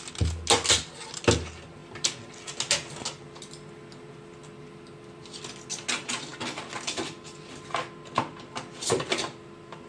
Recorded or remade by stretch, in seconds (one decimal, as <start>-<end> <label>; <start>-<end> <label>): 0.0-9.9 recorded